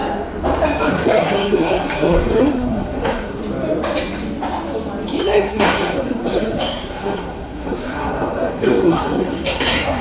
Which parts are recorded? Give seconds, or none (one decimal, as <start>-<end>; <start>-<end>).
0.0-0.9; 3.4-5.2

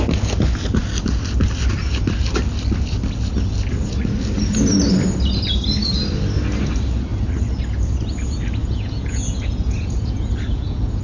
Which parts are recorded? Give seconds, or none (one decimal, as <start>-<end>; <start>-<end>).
0.0-8.6

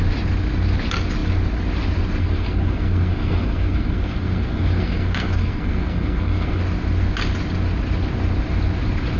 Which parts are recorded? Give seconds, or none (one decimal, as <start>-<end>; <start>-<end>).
0.0-2.2; 6.6-9.2

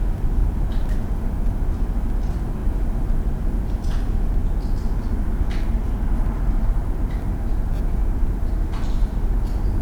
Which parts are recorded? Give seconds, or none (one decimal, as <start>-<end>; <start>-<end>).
0.0-0.4; 1.4-9.8